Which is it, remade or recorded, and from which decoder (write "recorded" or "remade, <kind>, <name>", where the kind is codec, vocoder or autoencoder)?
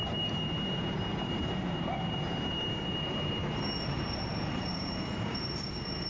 remade, vocoder, BigVGAN v2